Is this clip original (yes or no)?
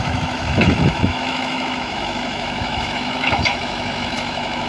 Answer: no